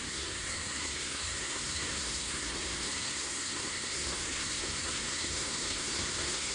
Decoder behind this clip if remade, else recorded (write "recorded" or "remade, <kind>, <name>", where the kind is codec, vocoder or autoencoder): remade, codec, SNAC